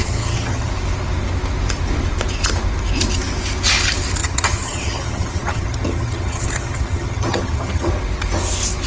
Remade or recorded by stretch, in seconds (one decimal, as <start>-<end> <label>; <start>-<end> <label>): 0.0-0.7 remade; 0.7-4.2 recorded; 4.2-7.9 remade; 7.9-8.9 recorded